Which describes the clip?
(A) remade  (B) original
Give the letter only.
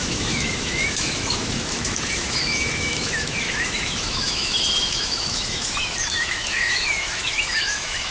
A